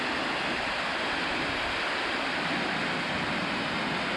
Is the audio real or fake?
real